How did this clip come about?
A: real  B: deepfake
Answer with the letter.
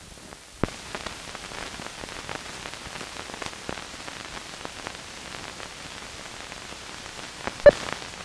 A